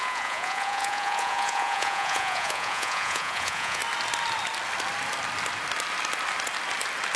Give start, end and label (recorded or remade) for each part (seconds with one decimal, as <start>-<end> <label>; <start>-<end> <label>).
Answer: 0.0-3.8 remade; 3.8-7.2 recorded